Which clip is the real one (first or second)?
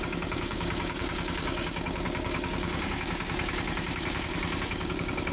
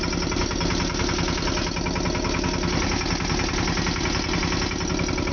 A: second